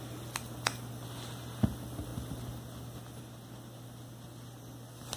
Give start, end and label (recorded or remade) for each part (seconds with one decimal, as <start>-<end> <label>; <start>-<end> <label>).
0.0-5.2 recorded